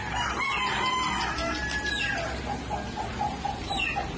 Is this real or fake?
real